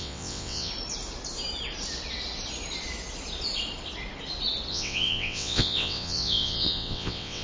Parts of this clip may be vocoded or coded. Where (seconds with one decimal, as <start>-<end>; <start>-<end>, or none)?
0.0-0.7; 4.7-7.4